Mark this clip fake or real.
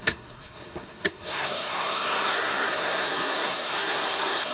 fake